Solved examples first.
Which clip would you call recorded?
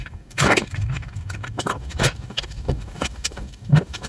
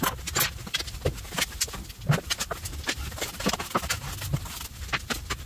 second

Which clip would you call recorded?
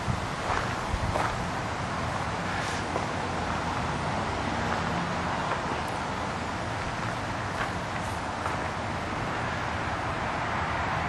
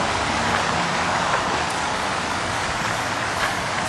first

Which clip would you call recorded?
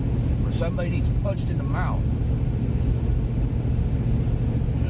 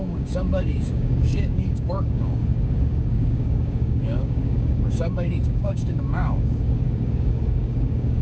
first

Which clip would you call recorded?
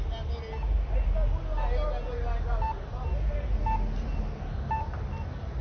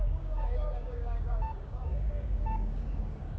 first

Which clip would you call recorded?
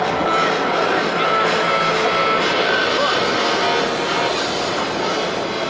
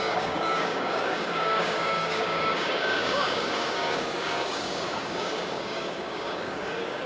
first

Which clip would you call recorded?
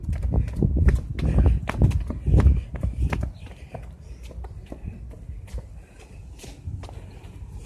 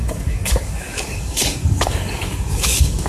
first